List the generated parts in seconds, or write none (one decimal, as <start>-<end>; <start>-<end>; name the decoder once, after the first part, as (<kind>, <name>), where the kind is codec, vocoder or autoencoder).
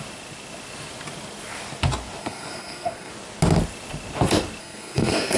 2.2-3.1 (codec, SNAC); 4.6-5.4